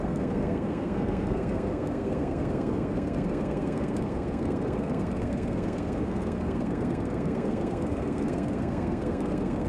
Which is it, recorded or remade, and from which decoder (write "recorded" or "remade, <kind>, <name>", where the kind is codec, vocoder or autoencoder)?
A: remade, codec, SNAC